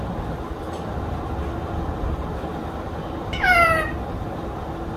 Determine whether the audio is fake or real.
real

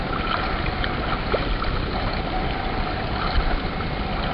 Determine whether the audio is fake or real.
real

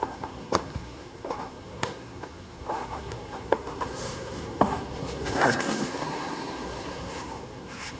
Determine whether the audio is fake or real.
fake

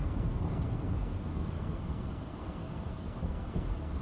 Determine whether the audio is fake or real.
fake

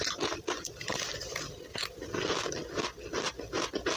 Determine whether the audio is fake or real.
real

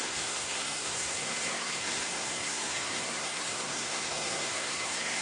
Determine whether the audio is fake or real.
fake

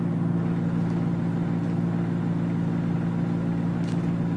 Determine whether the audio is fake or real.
real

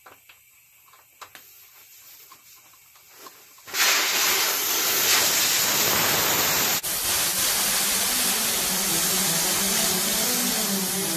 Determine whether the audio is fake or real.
real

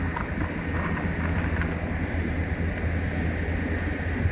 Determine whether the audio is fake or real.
real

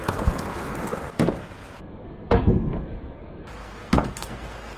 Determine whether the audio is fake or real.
fake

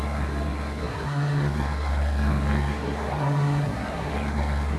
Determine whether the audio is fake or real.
fake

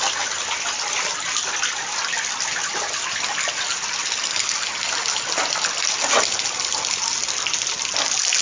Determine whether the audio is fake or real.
real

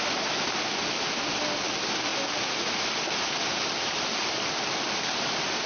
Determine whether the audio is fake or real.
real